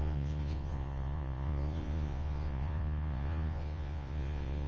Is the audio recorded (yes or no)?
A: no